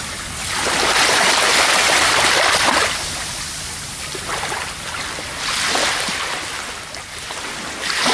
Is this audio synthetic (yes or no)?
no